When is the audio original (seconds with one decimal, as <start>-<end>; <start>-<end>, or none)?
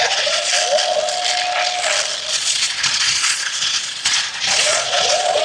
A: 0.5-2.3